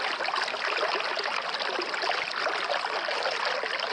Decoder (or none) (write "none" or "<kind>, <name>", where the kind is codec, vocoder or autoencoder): none